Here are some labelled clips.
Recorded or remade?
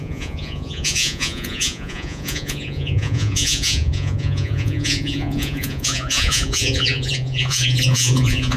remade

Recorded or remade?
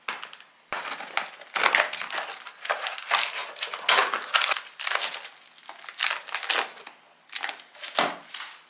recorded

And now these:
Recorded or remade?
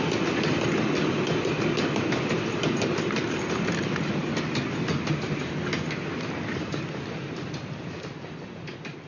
recorded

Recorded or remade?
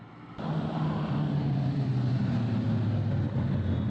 recorded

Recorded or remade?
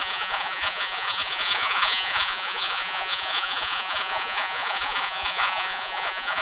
remade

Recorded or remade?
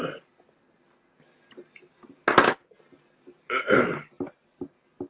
recorded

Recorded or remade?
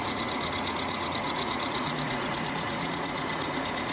remade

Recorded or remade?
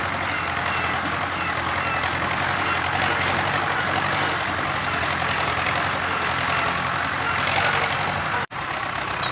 recorded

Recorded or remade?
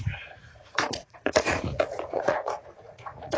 remade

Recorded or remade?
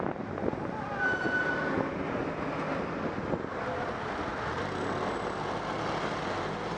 recorded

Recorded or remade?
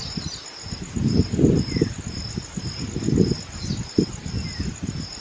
recorded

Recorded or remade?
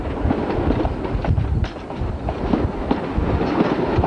recorded